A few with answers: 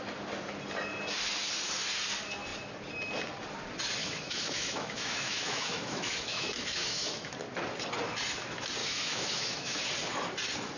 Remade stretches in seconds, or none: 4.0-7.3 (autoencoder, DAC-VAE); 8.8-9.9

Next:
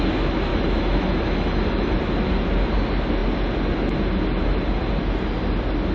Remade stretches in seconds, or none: 0.5-2.0 (autoencoder, DAC-VAE)

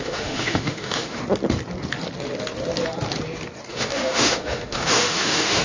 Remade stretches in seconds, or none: 0.0-1.2 (autoencoder, DAC-VAE); 3.7-5.6

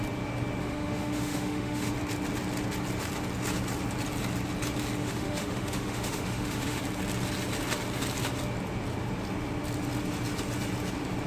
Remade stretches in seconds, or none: 0.6-1.9 (autoencoder, DAC-VAE); 5.0-6.8